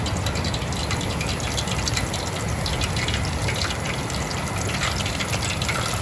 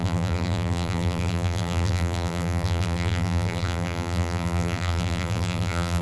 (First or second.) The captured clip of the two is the first